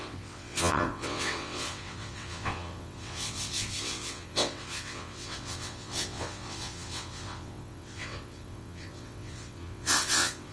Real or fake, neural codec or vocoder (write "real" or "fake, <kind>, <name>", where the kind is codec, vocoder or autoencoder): fake, vocoder, WaveNeXt